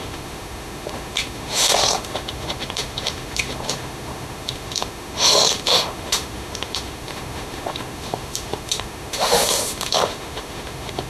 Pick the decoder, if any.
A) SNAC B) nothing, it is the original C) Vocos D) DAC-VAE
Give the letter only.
D